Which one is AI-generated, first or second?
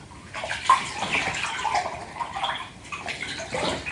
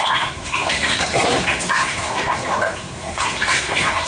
second